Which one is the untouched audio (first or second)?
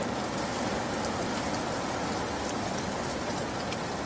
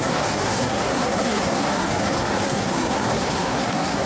first